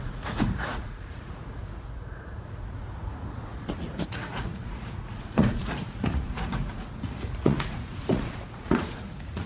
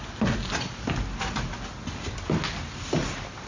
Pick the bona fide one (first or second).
second